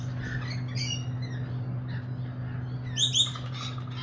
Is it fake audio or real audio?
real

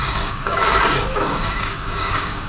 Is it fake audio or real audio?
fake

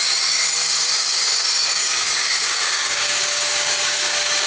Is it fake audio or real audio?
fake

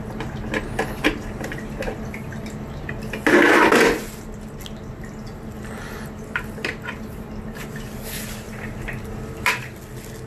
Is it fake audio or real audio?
real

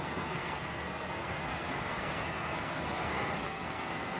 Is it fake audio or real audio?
fake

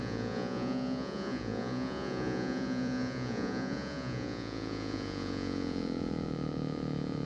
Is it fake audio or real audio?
fake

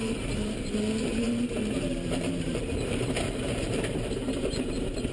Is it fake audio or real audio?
fake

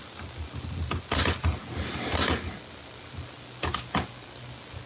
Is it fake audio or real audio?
real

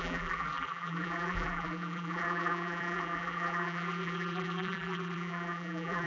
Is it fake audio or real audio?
fake